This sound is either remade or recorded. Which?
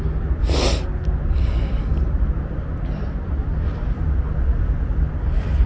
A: recorded